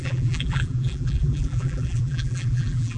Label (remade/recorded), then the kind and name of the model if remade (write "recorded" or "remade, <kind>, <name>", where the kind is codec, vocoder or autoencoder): remade, vocoder, BigVGAN v2